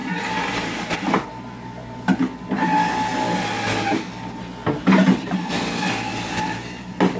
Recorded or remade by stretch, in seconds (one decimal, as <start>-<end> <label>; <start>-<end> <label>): 0.0-7.2 recorded

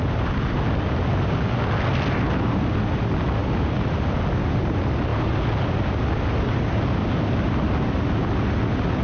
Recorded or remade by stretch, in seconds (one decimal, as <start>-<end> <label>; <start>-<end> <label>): 0.0-9.0 recorded

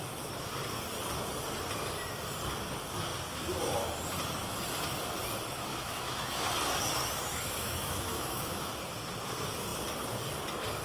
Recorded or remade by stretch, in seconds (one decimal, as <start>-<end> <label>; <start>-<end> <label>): 0.0-5.7 recorded; 5.7-6.5 remade; 6.5-7.3 recorded; 7.3-8.7 remade; 8.7-10.8 recorded

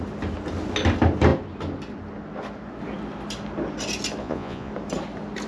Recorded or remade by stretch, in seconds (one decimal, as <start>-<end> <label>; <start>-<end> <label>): 0.0-4.2 recorded; 4.2-4.7 remade; 4.7-5.5 recorded

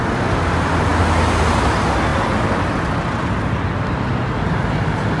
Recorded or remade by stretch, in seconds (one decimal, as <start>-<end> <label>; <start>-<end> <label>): 0.0-5.2 recorded

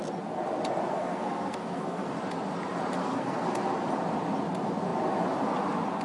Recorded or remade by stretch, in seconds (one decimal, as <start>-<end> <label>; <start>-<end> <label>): 0.0-0.9 recorded; 0.9-2.1 remade; 2.1-3.0 recorded; 3.0-3.5 remade; 3.5-6.0 recorded

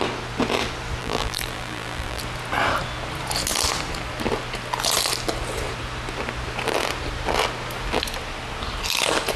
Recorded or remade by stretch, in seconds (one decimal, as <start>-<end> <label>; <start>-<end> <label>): 0.0-1.0 recorded; 1.0-2.2 remade; 2.2-9.4 recorded

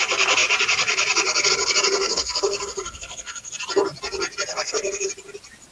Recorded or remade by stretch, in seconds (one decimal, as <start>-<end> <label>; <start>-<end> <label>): 0.0-2.0 recorded; 2.0-3.5 remade; 3.5-4.5 recorded; 4.5-5.1 remade; 5.1-5.7 recorded